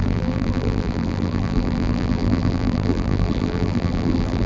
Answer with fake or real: fake